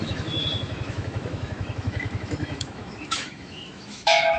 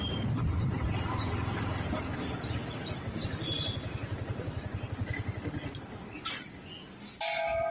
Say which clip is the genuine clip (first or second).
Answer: second